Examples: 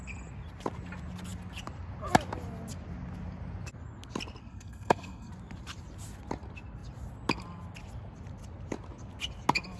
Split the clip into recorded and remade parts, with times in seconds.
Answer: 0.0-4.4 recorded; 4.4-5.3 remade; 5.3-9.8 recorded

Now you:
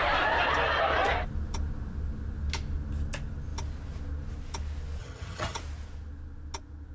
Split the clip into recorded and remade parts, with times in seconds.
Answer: 0.0-5.0 recorded; 5.0-5.6 remade; 5.6-6.9 recorded

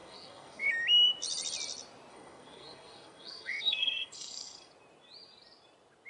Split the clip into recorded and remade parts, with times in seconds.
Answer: 0.0-0.7 remade; 0.7-2.1 recorded; 2.1-4.7 remade; 4.7-6.1 recorded

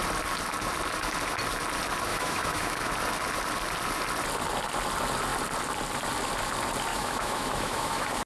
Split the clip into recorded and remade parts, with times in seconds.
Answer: 0.0-2.1 recorded; 2.1-2.9 remade; 2.9-6.9 recorded; 6.9-8.3 remade

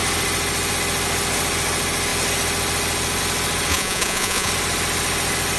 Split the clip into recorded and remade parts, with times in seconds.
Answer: 0.0-3.7 recorded; 3.7-4.5 remade; 4.5-5.6 recorded

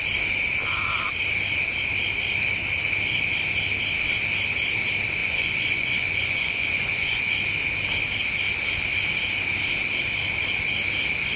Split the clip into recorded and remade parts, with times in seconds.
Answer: 0.0-5.2 recorded; 5.2-7.2 remade; 7.2-11.4 recorded

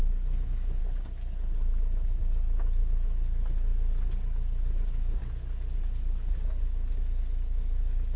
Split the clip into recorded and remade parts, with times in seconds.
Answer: 0.0-8.2 recorded